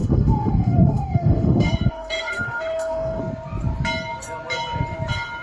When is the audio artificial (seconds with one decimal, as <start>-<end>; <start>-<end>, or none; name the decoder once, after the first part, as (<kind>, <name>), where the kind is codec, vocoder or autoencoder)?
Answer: 0.0-3.2 (autoencoder, DAC-VAE)